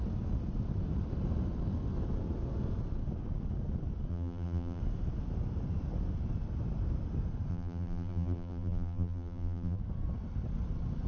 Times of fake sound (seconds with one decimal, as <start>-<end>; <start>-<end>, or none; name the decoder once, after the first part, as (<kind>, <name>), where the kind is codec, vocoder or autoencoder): 4.1-4.8 (vocoder, BigVGAN v2); 7.5-9.8